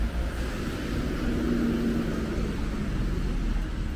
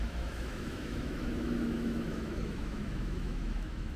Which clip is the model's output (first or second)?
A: second